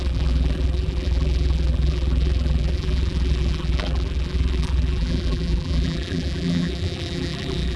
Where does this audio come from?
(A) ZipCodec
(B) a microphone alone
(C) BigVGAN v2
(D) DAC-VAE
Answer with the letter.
C